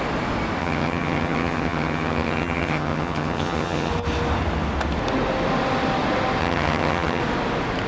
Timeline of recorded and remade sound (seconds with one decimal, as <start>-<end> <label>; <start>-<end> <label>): 0.0-0.6 recorded; 0.6-3.9 remade; 3.9-6.4 recorded; 6.4-7.2 remade; 7.2-7.9 recorded